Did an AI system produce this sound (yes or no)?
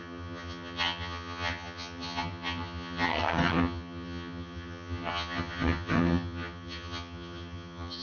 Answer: yes